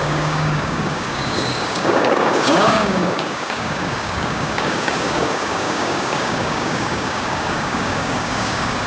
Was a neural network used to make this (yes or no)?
yes